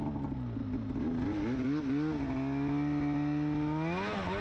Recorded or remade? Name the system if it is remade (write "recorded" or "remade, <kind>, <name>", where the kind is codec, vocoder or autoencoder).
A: recorded